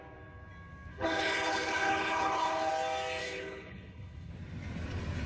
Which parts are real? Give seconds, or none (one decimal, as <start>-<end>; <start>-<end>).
0.0-0.9; 2.7-3.2; 4.3-5.3